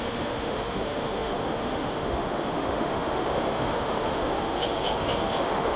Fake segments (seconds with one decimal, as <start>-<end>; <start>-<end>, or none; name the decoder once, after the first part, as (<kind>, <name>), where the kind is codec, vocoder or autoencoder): 0.0-5.8 (autoencoder, DAC-VAE)